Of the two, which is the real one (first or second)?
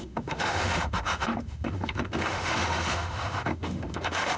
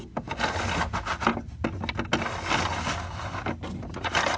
second